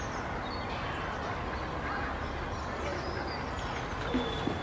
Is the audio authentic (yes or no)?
yes